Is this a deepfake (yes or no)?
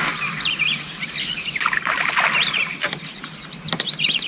no